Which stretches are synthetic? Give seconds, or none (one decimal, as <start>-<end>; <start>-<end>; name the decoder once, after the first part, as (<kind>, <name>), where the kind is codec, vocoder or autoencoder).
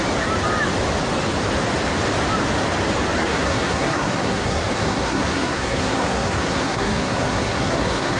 3.2-8.2 (codec, SNAC)